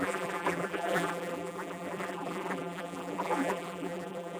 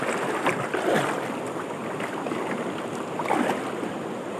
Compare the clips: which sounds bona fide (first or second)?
second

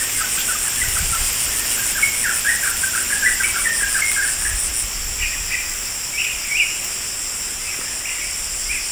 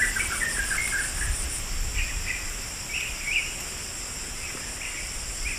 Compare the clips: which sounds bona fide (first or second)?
first